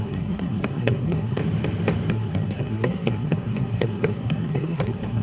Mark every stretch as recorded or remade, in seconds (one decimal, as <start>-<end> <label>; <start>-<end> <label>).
0.0-1.4 remade; 1.4-2.1 recorded; 2.1-5.2 remade